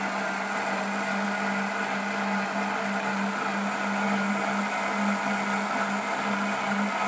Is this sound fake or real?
real